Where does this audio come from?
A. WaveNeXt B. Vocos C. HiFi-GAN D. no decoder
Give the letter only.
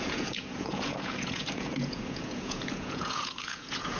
B